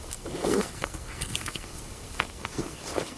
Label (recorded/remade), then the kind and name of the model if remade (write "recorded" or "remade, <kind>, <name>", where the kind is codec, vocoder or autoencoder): remade, codec, SNAC